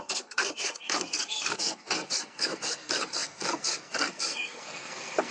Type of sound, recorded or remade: remade